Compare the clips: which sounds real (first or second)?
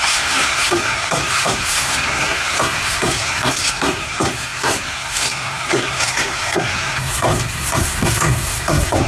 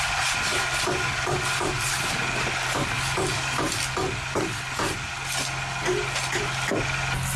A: second